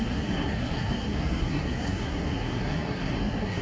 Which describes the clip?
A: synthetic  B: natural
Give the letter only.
A